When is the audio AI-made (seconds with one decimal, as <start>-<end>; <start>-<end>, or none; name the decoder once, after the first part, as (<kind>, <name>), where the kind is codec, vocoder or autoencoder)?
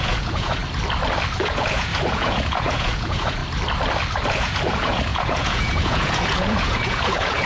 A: 0.0-0.6 (vocoder, Vocos); 1.4-3.4; 4.3-7.5